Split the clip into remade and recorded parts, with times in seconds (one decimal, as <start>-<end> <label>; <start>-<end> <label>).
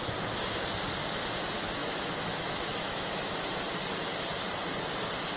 0.0-1.8 recorded; 1.8-3.6 remade; 3.6-5.4 recorded